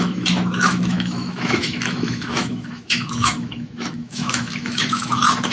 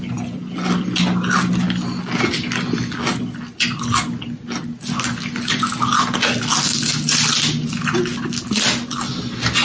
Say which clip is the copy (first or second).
first